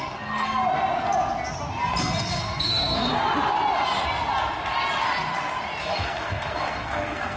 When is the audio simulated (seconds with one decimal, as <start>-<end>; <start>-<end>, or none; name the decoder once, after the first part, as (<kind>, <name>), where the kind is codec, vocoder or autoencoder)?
0.0-0.6 (codec, SNAC); 2.0-3.1; 5.8-7.4